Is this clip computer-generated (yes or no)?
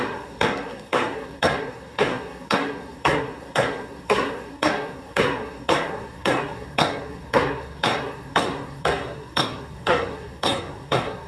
yes